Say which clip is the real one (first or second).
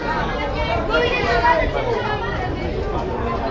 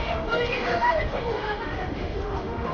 first